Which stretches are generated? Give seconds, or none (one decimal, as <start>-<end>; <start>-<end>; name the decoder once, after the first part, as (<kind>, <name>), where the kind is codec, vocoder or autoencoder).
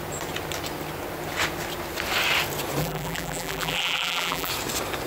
2.8-4.5 (vocoder, BigVGAN v2)